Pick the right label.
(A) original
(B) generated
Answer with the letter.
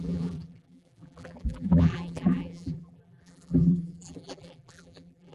B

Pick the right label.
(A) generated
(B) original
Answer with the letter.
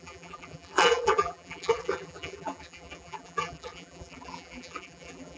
A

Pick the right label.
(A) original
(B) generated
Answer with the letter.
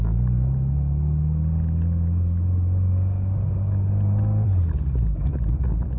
A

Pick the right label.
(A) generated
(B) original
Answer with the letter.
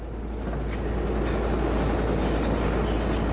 B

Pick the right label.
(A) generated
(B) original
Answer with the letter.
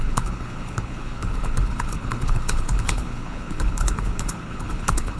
A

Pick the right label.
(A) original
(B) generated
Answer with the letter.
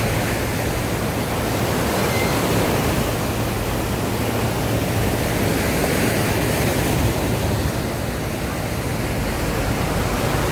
A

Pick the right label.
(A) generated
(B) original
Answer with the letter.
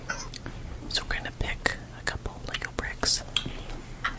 B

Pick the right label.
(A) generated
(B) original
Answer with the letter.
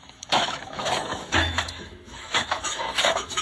A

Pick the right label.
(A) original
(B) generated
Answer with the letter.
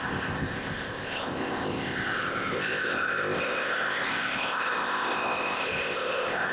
B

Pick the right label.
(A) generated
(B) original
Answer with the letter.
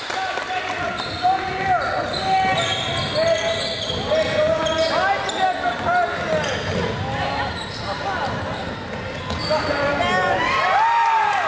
B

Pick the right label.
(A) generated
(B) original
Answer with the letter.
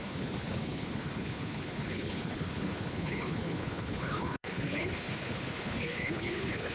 A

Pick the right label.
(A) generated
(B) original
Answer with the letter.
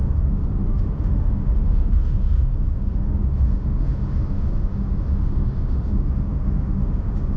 A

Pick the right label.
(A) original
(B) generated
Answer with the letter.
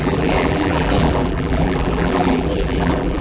B